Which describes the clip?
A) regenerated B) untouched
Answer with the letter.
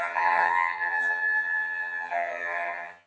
A